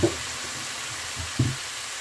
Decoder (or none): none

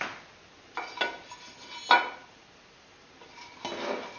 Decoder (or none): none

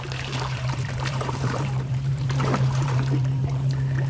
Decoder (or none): vocoder, BigVGAN v2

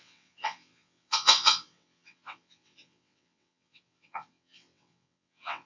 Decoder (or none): vocoder, WaveNeXt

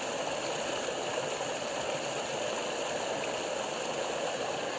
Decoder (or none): none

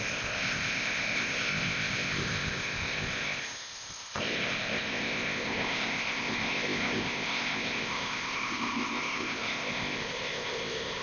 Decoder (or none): codec, ZipCodec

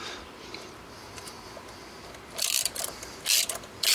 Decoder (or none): vocoder, BigVGAN v2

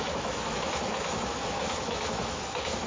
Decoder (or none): autoencoder, DAC-VAE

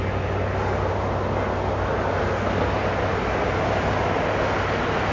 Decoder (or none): none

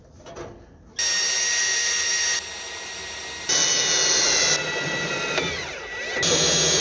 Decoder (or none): none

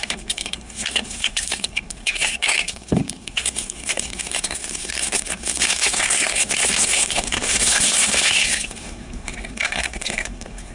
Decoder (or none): codec, SNAC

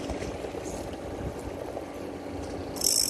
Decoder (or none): none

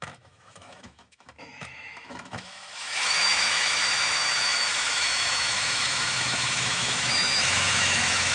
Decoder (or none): autoencoder, DAC-VAE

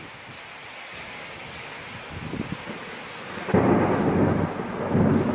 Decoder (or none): none